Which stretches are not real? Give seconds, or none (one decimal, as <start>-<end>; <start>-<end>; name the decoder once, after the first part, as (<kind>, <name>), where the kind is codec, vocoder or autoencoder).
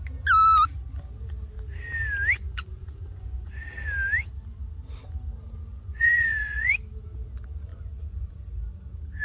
2.4-3.5 (vocoder, Vocos); 5.7-6.7; 7.7-8.3